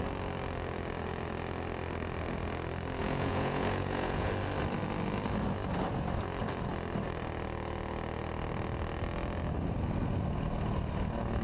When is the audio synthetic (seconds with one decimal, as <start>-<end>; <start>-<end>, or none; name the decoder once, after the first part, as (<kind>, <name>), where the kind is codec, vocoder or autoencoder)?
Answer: 3.0-4.3 (vocoder, Vocos)

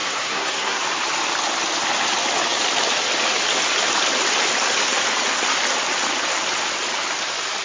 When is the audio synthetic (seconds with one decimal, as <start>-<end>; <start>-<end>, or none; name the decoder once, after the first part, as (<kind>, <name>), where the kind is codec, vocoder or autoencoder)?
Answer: 0.0-0.8 (codec, SNAC)

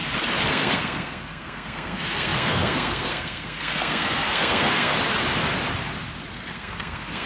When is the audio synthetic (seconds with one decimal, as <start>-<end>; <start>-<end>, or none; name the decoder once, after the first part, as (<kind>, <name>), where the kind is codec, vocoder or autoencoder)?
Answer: 0.5-4.9 (codec, SNAC); 6.3-7.3